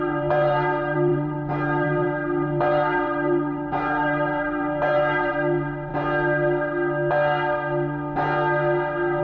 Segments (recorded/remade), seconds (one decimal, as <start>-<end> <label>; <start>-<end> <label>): 0.0-5.9 remade; 5.9-9.2 recorded